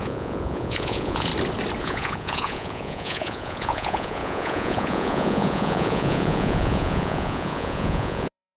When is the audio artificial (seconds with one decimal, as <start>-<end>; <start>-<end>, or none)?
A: 0.0-1.3; 1.8-8.6